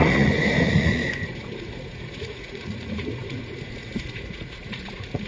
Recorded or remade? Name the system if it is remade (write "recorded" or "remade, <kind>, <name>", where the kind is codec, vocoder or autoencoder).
remade, vocoder, Vocos